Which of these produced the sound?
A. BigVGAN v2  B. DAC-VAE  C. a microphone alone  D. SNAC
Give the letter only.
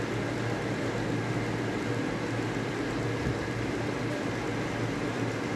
C